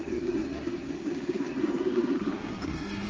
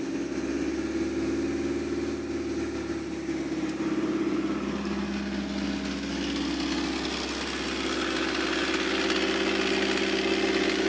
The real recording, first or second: second